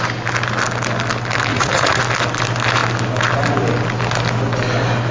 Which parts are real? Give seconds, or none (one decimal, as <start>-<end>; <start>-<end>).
0.0-1.5; 2.0-5.1